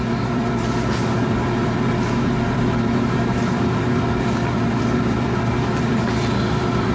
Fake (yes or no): yes